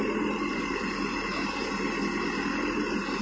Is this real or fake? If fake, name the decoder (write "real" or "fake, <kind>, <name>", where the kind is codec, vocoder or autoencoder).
real